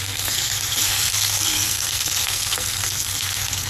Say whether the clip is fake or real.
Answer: fake